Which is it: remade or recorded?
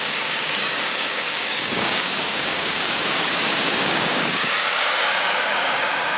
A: remade